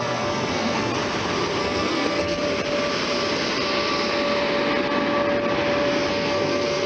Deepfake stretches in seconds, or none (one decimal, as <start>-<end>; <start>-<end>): 0.0-0.9; 1.6-2.4; 6.1-6.9